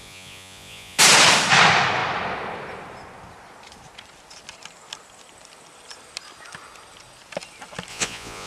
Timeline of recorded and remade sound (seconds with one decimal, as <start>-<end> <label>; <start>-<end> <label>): 0.0-1.0 remade; 1.0-7.9 recorded; 7.9-8.5 remade